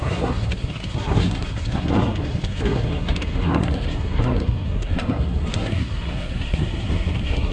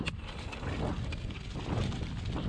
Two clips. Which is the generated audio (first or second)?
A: first